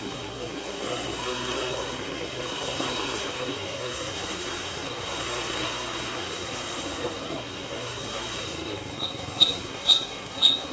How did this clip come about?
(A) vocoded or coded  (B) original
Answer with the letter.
A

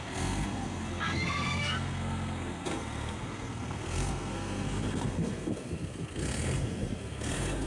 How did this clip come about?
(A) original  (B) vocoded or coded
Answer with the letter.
B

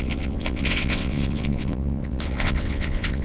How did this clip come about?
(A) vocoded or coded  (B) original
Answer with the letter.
A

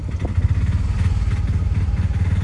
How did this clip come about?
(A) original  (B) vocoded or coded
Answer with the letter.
A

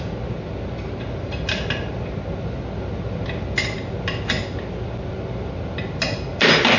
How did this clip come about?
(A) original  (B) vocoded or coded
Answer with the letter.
A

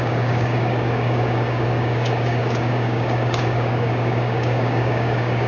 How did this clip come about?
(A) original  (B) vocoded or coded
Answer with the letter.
B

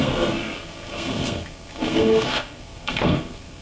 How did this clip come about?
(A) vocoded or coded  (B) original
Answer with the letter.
A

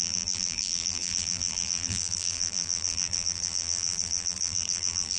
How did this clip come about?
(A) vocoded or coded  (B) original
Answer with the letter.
A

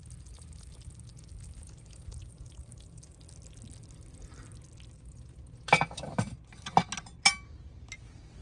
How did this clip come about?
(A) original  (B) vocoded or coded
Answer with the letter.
A